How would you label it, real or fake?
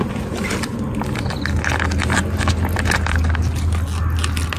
real